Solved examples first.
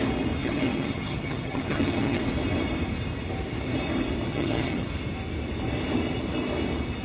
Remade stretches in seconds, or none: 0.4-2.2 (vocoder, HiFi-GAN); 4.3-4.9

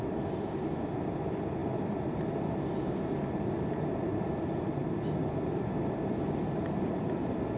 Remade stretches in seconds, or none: 1.6-2.9 (vocoder, BigVGAN v2)

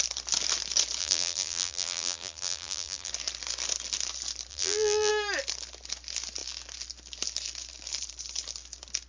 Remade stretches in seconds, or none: 1.0-3.1 (vocoder, BigVGAN v2); 4.5-5.1

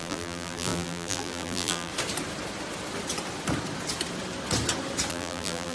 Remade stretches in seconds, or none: 0.0-1.9 (vocoder, BigVGAN v2); 5.1-5.7

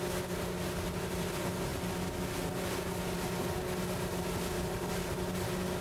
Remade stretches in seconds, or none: none

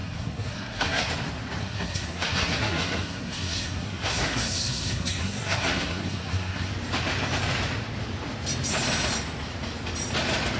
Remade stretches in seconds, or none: 0.0-1.1 (codec, SNAC); 1.6-6.7

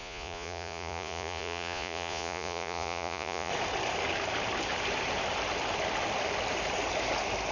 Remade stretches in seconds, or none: 0.0-3.5 (vocoder, Vocos)